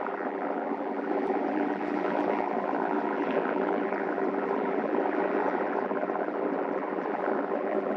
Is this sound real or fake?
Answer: fake